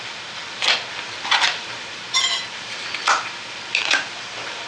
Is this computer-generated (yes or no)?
yes